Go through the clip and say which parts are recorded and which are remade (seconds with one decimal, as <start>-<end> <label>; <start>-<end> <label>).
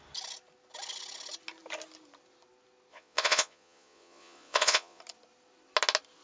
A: 0.0-2.9 recorded; 2.9-5.0 remade; 5.0-6.2 recorded